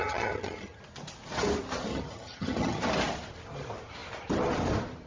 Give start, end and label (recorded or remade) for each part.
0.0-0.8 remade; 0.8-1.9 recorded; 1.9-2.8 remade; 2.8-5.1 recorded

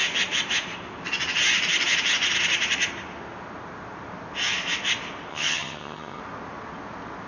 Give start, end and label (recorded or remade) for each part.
0.0-5.3 recorded; 5.3-6.2 remade; 6.2-7.3 recorded